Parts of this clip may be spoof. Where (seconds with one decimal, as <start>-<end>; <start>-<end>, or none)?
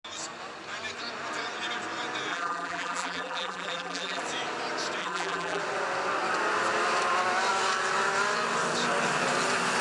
2.3-4.2; 5.0-5.6